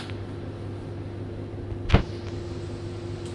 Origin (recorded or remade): recorded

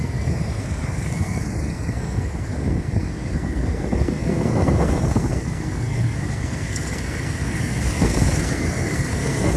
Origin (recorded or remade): remade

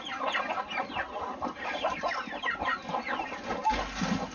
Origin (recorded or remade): recorded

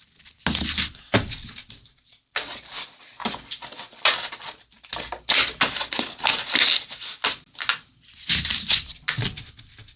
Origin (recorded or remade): recorded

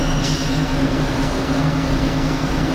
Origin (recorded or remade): remade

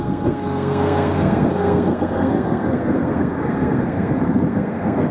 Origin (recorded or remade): remade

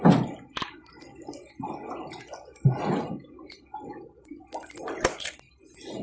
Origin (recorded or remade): recorded